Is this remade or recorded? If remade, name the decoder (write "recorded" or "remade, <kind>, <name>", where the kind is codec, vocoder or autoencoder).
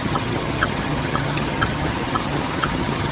remade, vocoder, HiFi-GAN